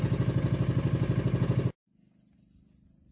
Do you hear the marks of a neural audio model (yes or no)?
no